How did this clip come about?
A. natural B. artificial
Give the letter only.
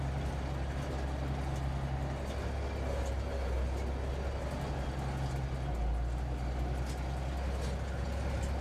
A